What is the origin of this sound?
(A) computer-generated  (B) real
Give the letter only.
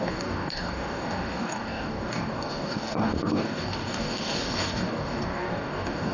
A